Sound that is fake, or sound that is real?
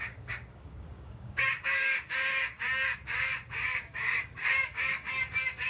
fake